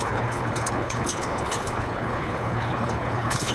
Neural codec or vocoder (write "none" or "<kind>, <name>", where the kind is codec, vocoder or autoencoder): codec, HILCodec